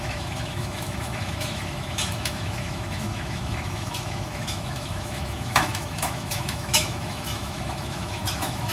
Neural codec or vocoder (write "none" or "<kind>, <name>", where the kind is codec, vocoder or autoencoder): autoencoder, DAC-VAE